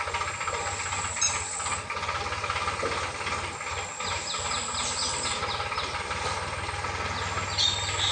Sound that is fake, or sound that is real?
real